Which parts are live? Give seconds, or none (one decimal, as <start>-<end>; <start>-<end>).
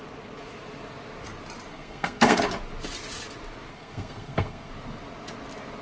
0.0-1.7; 2.4-3.7; 4.7-5.8